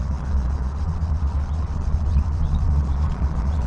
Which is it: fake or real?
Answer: fake